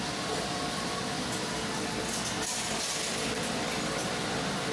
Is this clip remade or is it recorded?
recorded